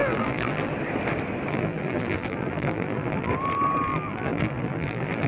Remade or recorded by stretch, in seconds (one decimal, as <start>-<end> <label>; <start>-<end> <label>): 0.0-0.7 remade; 0.7-1.5 recorded; 1.5-3.3 remade; 3.3-3.9 recorded; 3.9-5.3 remade